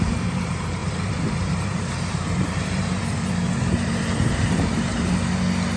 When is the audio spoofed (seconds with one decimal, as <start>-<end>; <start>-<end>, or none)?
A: 0.0-4.9